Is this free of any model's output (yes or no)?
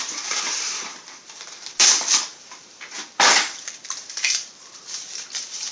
no